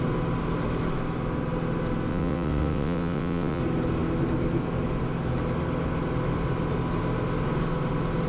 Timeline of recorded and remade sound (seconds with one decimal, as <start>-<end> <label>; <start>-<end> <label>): 0.0-2.1 recorded; 2.1-3.6 remade; 3.6-8.3 recorded